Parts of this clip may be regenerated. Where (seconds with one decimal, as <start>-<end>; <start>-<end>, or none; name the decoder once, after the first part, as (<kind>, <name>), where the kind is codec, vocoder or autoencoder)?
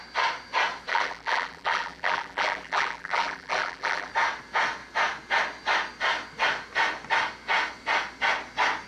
0.9-4.1 (vocoder, BigVGAN v2)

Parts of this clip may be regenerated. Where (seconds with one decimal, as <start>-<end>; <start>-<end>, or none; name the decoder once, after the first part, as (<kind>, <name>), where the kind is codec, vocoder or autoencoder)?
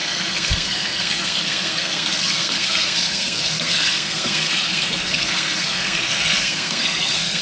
0.0-7.4 (codec, SNAC)